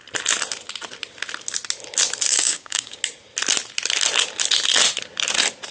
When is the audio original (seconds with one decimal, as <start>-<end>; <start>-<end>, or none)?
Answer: 0.0-2.3; 3.0-5.7